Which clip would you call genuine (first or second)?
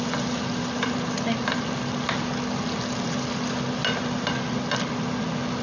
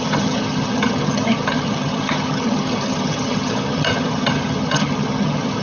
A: first